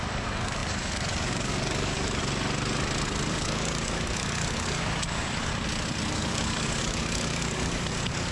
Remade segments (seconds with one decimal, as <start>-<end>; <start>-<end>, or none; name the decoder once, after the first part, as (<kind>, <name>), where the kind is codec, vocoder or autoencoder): 0.0-2.2 (codec, DAC); 3.3-5.5; 6.1-8.3